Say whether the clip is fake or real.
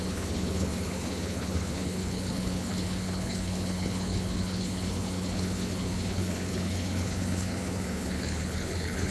fake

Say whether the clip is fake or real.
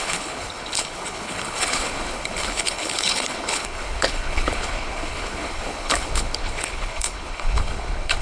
fake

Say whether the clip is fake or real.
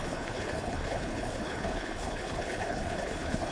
fake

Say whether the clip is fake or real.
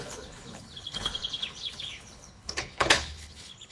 fake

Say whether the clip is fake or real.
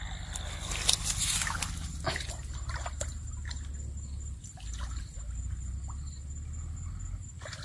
real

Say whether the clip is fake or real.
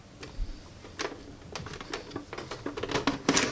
real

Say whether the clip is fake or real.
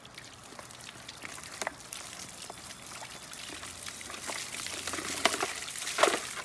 real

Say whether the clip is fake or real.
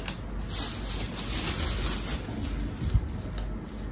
real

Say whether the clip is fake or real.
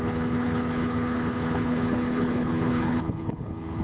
fake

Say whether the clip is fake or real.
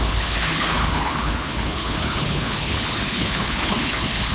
fake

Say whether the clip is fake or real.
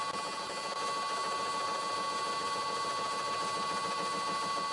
real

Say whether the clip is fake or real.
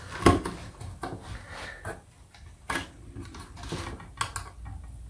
real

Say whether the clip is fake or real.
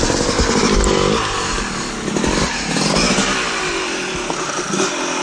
real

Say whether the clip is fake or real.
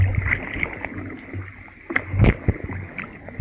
real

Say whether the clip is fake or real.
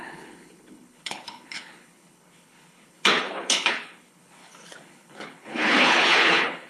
fake